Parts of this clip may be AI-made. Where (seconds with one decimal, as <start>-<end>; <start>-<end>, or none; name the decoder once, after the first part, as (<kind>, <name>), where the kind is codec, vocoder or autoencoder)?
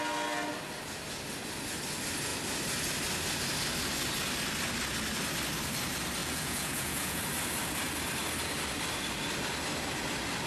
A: 6.2-7.2 (vocoder, Vocos)